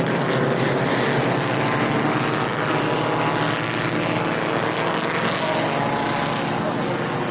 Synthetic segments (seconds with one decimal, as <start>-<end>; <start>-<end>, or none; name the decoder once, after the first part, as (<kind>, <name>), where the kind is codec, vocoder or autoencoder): none